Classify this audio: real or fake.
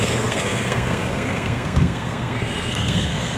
fake